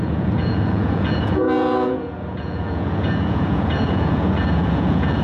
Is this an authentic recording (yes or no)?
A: no